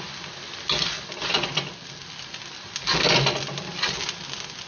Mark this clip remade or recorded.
recorded